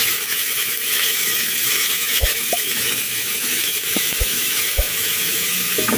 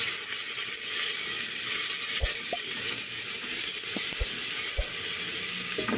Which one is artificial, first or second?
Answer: first